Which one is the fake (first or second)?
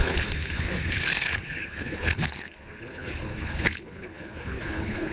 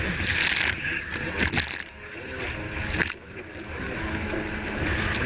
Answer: first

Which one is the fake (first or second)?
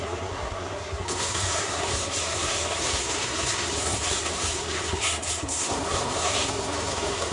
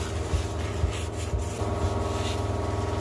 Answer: first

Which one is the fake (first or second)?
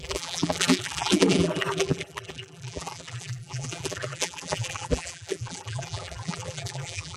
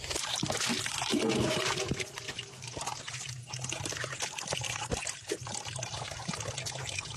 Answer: first